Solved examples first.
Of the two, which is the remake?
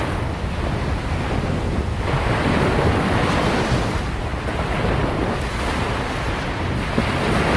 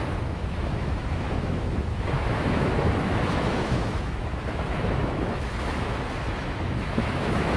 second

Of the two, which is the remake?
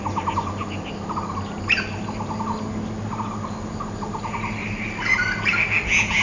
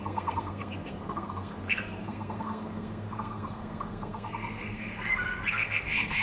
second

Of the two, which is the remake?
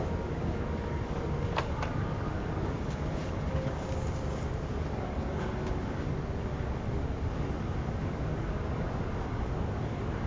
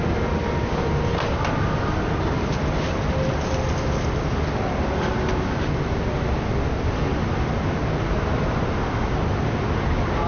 first